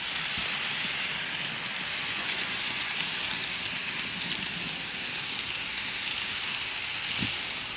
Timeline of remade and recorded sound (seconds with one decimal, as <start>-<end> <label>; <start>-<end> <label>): 0.0-2.0 recorded; 2.0-2.9 remade; 2.9-7.8 recorded